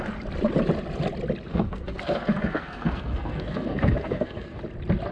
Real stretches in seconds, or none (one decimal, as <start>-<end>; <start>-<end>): 0.0-1.5; 4.6-5.1